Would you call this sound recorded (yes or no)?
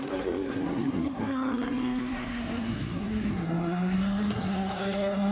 no